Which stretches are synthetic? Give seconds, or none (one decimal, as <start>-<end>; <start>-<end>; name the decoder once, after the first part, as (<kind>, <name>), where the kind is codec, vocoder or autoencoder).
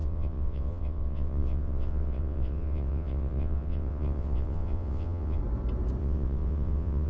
0.0-5.4 (vocoder, WaveNeXt); 6.0-7.1